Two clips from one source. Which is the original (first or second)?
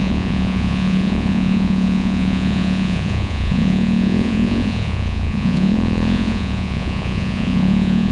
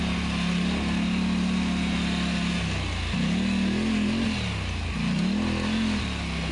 second